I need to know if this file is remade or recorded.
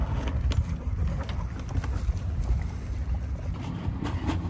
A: recorded